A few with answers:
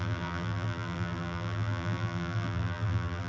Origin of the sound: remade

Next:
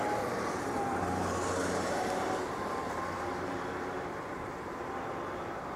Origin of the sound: remade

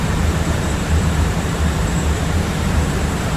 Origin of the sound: remade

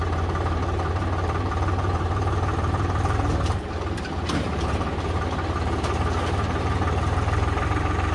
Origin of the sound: remade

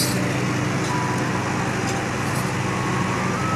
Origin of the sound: recorded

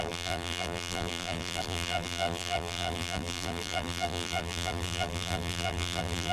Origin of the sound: remade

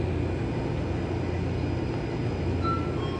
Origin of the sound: recorded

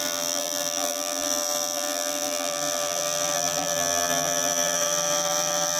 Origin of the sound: remade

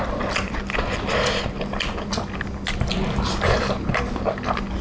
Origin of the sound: recorded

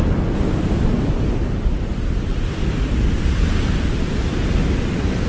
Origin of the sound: recorded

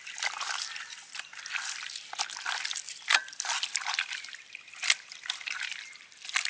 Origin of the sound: remade